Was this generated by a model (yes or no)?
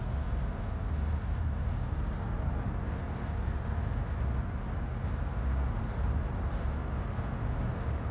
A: no